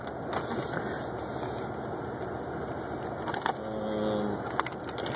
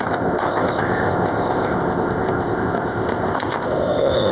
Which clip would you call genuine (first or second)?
first